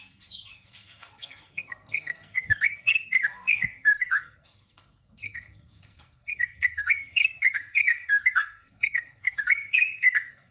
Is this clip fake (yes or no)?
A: yes